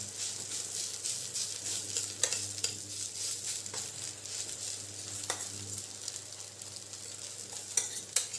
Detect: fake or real real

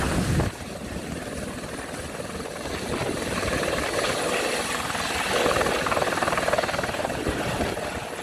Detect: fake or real real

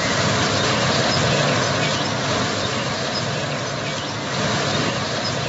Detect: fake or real real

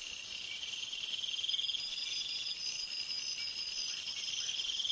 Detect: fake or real real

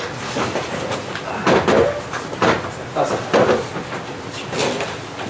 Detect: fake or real real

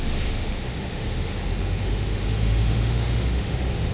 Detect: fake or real fake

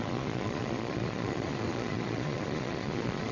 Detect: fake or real fake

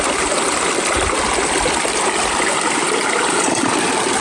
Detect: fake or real real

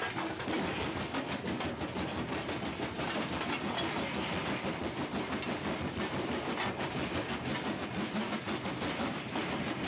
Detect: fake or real real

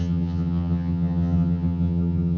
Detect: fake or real fake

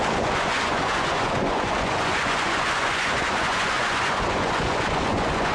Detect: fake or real fake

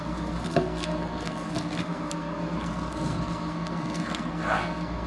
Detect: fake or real fake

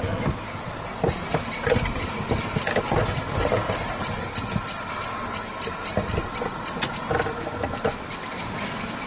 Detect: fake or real real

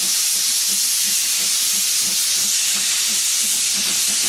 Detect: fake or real real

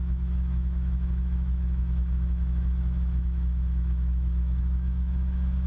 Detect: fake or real fake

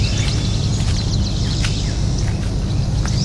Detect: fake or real real